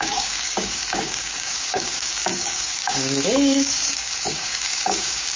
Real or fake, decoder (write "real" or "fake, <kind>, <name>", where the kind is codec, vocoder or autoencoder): fake, codec, DAC